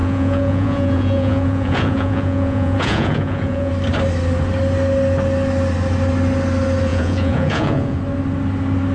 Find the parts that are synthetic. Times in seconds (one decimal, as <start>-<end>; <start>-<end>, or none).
0.0-3.7; 6.9-8.0